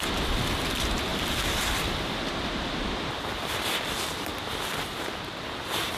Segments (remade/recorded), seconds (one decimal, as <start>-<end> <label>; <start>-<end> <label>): 0.0-6.0 recorded